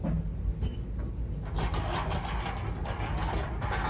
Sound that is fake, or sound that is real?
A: real